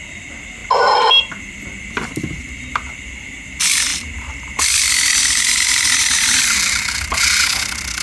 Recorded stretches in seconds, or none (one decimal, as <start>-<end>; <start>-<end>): 0.0-8.0